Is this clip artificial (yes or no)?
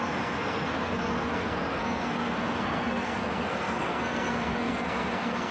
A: yes